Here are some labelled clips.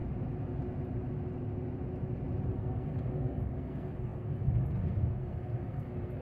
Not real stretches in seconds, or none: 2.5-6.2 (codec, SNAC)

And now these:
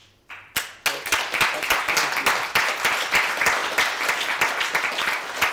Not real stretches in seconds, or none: none

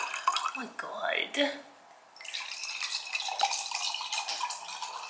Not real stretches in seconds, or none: none

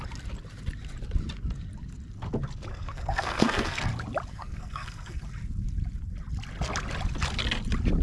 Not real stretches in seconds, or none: 2.7-3.9 (codec, SNAC); 4.3-5.2

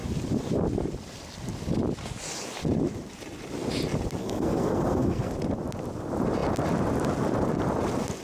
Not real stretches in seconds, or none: 4.2-5.3 (codec, SNAC)

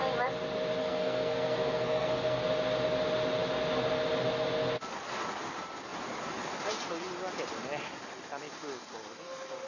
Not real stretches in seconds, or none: 0.8-2.4 (codec, SNAC)